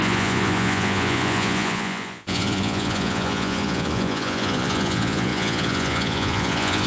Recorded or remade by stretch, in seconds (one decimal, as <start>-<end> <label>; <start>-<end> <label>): 0.0-6.9 remade